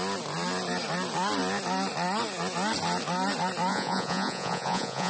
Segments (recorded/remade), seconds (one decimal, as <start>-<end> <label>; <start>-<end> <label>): 0.0-3.7 recorded; 3.7-5.1 remade